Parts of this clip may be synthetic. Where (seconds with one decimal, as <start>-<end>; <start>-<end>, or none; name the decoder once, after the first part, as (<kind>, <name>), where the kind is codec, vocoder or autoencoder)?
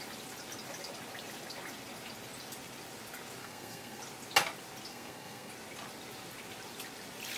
3.4-4.0 (codec, SNAC); 4.9-5.5